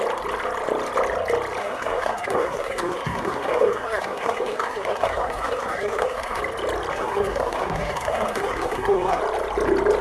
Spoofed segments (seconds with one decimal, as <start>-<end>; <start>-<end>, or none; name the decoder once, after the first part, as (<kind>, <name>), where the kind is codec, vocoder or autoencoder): 1.6-6.4 (codec, SNAC); 6.9-9.2